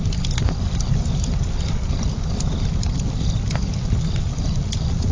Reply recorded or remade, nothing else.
recorded